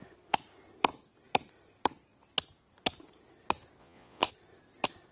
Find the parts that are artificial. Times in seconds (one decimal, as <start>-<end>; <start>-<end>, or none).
3.8-4.3